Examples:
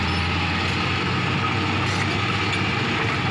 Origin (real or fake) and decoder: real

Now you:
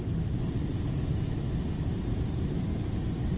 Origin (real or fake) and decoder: real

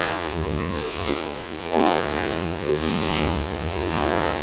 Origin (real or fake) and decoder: fake, vocoder, Vocos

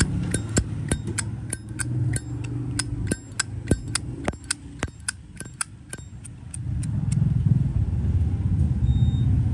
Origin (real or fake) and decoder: real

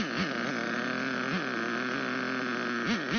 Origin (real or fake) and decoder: real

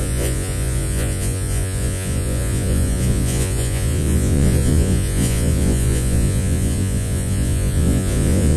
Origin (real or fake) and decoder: fake, vocoder, Vocos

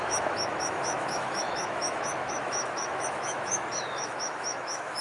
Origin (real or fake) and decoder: fake, autoencoder, DAC-VAE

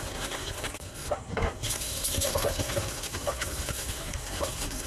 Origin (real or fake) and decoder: fake, codec, SNAC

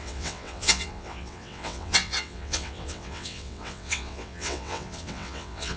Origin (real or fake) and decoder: fake, vocoder, WaveNeXt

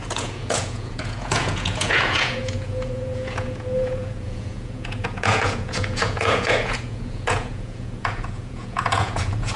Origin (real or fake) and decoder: fake, vocoder, Vocos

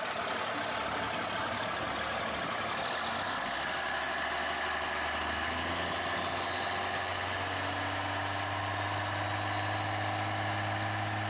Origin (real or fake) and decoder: real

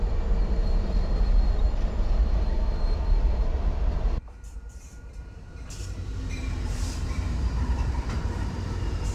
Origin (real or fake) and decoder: fake, vocoder, BigVGAN v2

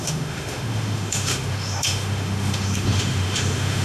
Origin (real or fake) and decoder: fake, autoencoder, DAC-VAE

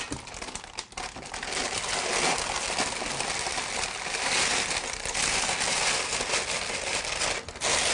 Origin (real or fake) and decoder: real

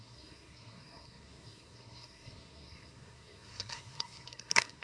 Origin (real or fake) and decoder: fake, codec, SNAC